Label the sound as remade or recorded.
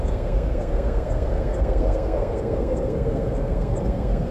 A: remade